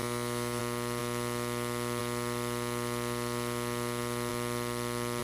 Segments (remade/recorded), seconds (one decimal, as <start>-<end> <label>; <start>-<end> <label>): 0.0-0.6 remade; 0.6-5.2 recorded